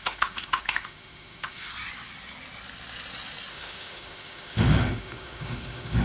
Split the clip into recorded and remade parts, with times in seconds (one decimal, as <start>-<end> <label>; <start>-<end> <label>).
0.0-1.7 remade; 1.7-3.5 recorded; 3.5-6.0 remade